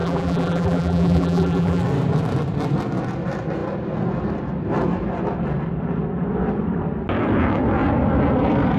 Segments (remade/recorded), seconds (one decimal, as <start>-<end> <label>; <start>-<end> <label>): 0.0-1.8 remade; 1.8-8.8 recorded